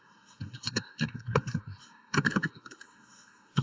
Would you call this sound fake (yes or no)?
yes